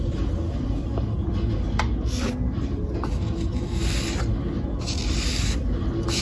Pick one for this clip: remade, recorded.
recorded